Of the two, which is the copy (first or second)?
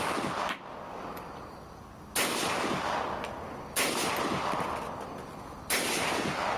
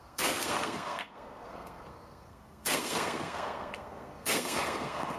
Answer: second